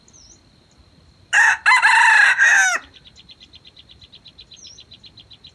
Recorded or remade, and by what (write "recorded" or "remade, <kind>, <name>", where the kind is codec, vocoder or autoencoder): recorded